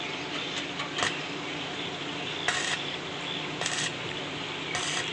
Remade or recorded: recorded